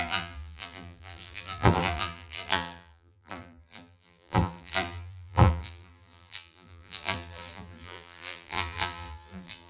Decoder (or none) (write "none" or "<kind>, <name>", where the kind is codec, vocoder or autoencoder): vocoder, BigVGAN v2